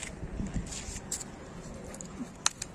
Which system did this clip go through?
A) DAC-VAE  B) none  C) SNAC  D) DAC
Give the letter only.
B